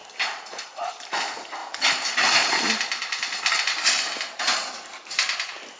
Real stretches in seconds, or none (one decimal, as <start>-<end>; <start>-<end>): 0.0-1.6; 5.1-5.8